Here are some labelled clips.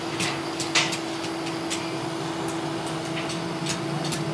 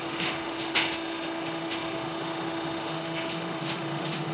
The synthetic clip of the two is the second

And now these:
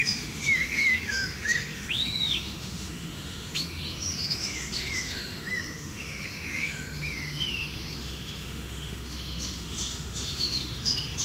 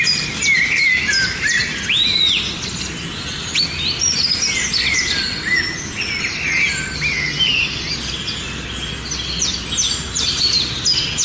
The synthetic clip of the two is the first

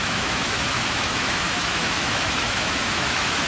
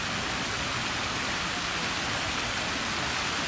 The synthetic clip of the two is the first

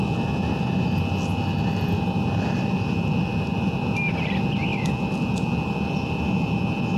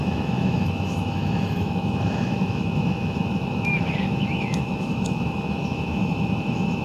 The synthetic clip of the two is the second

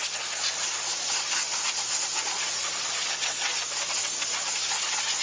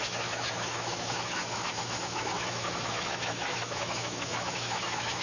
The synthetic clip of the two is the second